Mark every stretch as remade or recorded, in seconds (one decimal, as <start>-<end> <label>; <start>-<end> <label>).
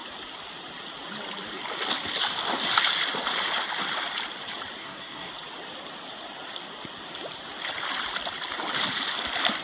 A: 0.0-4.8 recorded; 4.8-5.3 remade; 5.3-9.6 recorded